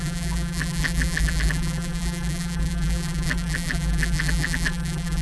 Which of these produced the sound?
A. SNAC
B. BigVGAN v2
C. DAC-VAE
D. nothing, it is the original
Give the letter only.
B